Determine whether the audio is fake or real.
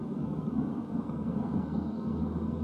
fake